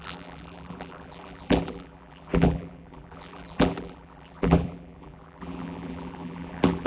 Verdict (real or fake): fake